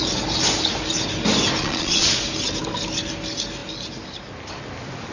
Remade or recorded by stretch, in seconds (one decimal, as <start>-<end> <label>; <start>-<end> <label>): 0.0-1.6 recorded; 1.6-2.2 remade; 2.2-5.1 recorded